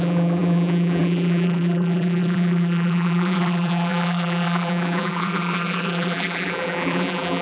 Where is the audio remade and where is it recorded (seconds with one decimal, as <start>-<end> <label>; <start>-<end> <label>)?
0.0-7.4 remade